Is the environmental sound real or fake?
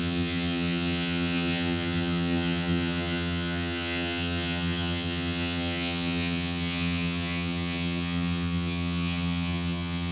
fake